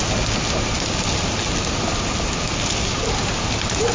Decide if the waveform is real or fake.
real